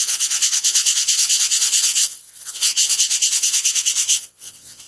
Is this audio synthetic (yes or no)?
yes